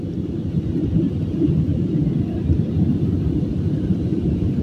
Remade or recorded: recorded